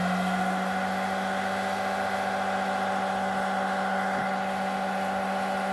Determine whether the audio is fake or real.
real